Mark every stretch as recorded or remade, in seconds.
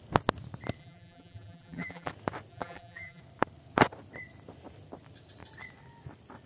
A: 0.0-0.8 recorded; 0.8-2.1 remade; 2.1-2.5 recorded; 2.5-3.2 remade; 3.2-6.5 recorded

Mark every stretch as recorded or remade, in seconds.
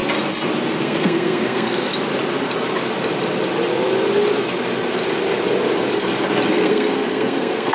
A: 0.0-0.8 recorded; 0.8-1.9 remade; 1.9-6.5 recorded; 6.5-7.7 remade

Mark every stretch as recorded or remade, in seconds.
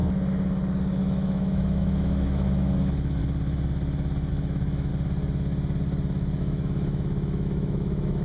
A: 0.0-1.0 recorded; 1.0-3.2 remade; 3.2-4.3 recorded; 4.3-4.9 remade; 4.9-6.4 recorded; 6.4-8.2 remade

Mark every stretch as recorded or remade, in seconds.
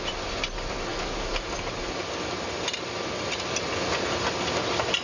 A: 0.0-5.0 recorded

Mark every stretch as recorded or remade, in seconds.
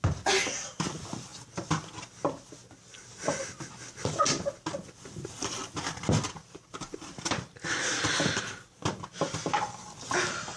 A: 0.0-10.6 recorded